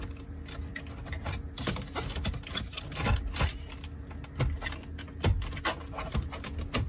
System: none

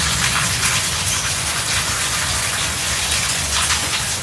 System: vocoder, Vocos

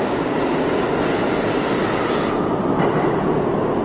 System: none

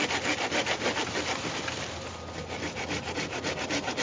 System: none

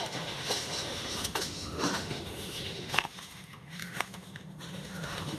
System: autoencoder, DAC-VAE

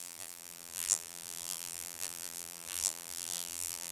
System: vocoder, BigVGAN v2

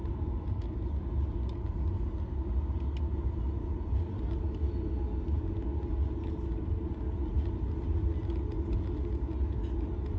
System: none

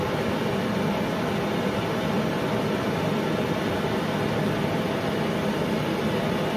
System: none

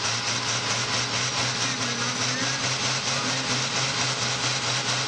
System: none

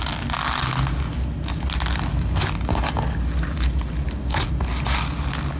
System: none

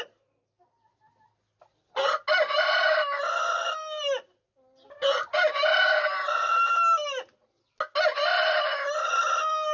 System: none